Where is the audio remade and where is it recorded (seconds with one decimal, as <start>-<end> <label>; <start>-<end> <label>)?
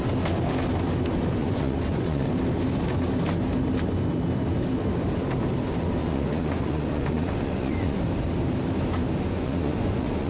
0.0-1.4 recorded; 1.4-2.3 remade; 2.3-6.0 recorded; 6.0-8.0 remade; 8.0-9.3 recorded; 9.3-10.3 remade